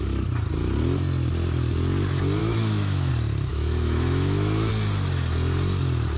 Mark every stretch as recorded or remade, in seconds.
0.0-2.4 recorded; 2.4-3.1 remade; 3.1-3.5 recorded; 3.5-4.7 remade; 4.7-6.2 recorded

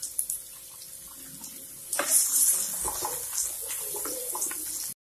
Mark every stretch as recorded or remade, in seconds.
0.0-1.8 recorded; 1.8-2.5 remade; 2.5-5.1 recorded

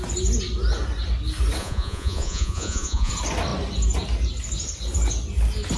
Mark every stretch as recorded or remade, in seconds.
0.0-1.6 recorded; 1.6-3.1 remade; 3.1-5.8 recorded